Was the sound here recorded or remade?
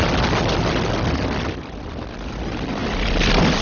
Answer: recorded